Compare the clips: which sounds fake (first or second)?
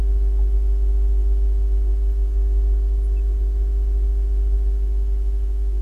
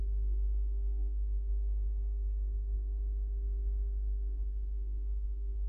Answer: second